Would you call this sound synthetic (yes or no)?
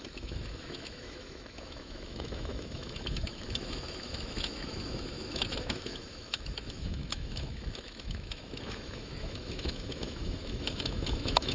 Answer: yes